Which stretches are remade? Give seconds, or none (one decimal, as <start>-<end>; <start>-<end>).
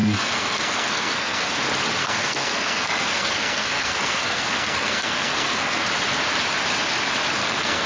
0.0-1.6; 2.0-5.8; 7.4-7.9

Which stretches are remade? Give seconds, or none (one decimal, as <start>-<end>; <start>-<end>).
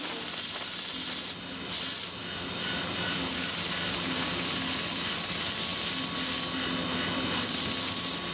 none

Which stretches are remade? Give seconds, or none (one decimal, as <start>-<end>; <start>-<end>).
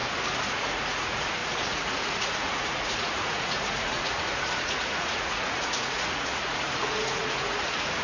0.5-8.0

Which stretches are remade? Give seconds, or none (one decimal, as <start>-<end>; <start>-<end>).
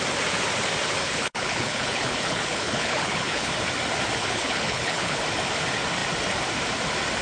1.0-3.5; 4.2-5.2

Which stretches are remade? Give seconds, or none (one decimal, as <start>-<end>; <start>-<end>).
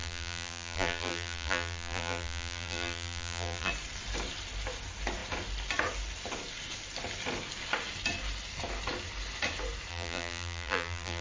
0.0-3.7; 9.9-11.2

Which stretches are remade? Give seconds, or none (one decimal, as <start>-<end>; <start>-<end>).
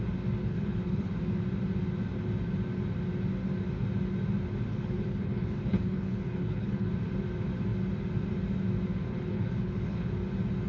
0.4-1.1; 4.7-6.9; 9.1-10.1